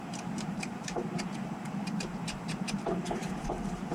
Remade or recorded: remade